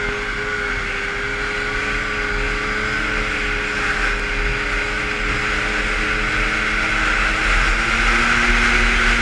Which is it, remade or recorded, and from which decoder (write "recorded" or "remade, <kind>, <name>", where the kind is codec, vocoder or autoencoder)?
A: recorded